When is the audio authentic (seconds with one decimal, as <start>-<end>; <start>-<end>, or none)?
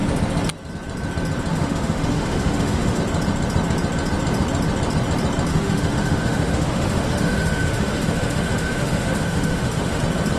0.0-1.5; 3.0-5.5; 10.0-10.4